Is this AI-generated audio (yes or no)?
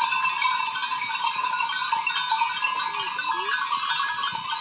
no